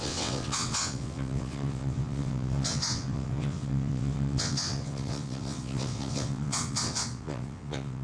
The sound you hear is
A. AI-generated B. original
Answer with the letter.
A